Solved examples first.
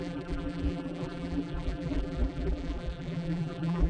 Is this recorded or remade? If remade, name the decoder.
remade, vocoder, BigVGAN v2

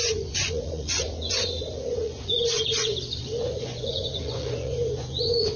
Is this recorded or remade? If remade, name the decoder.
remade, vocoder, Vocos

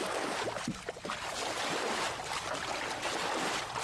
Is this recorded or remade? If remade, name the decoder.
recorded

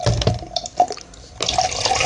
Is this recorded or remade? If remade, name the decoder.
recorded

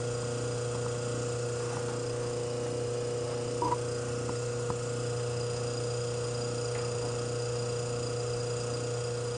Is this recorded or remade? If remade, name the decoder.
recorded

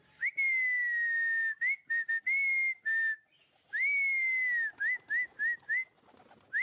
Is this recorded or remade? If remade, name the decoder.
recorded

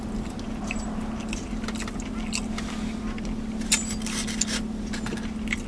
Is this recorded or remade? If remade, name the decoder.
recorded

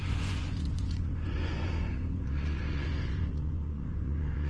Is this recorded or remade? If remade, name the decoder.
remade, vocoder, Vocos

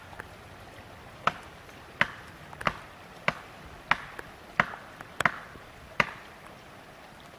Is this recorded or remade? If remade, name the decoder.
recorded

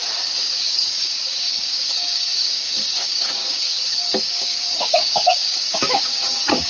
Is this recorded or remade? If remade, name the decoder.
remade, codec, DAC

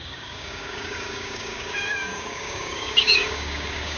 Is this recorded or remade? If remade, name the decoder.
remade, codec, DAC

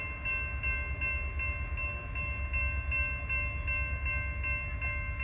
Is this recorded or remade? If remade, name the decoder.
recorded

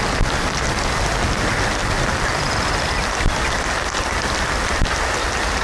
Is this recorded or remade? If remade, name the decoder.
recorded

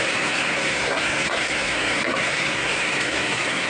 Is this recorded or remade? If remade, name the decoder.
remade, codec, SNAC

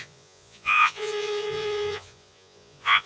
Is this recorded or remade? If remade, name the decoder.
remade, vocoder, Vocos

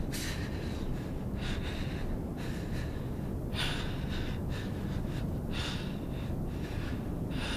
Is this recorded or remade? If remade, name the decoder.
recorded